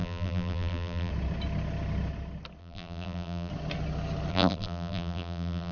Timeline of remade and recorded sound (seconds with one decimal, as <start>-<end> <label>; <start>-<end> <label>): 0.0-1.1 remade; 1.1-2.6 recorded; 2.6-3.5 remade; 3.5-4.3 recorded; 4.3-5.7 remade